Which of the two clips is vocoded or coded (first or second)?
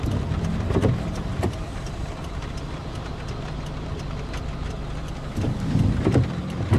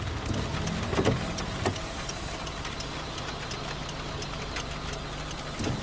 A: first